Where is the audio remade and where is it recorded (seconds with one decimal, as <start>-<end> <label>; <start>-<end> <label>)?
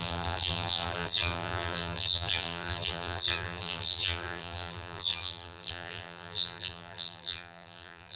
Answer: 0.0-8.2 remade